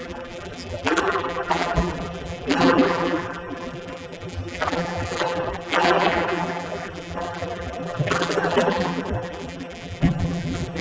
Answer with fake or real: fake